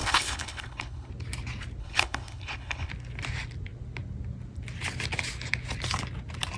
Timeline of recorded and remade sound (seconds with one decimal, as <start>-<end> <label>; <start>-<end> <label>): 0.0-1.1 remade; 1.1-1.8 recorded; 1.8-2.9 remade; 2.9-6.6 recorded